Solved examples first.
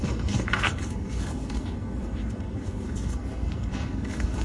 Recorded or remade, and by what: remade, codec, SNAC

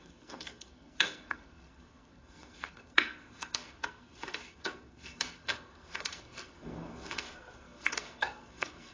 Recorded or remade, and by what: remade, codec, SNAC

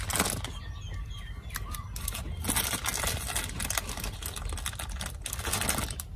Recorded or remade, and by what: recorded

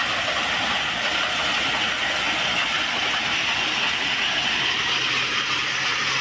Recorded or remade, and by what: recorded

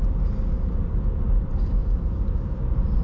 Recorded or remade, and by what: recorded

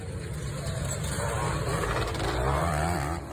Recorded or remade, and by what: recorded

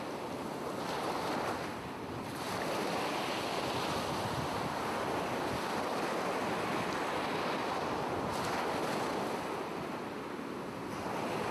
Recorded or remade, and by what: recorded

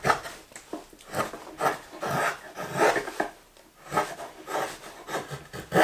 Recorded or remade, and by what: recorded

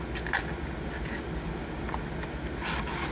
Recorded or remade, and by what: recorded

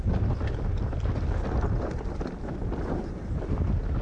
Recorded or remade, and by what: recorded